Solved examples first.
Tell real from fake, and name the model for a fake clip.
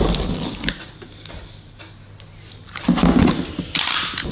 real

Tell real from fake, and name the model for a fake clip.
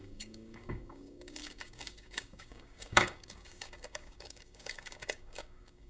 fake, codec, DAC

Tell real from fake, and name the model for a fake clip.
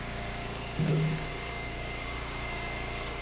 fake, codec, DAC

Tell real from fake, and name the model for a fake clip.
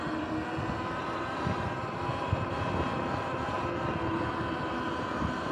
real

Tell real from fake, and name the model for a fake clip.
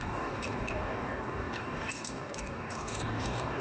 fake, codec, DAC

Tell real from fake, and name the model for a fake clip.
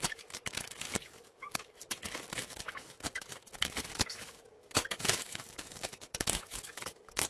fake, codec, DAC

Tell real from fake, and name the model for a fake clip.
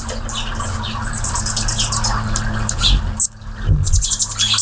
real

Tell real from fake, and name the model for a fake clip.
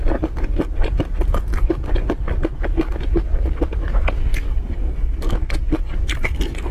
real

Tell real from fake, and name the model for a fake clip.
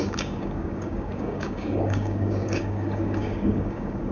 fake, codec, DAC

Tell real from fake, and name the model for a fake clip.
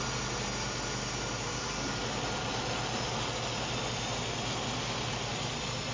real